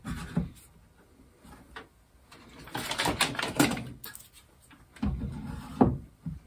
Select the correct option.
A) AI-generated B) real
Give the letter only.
B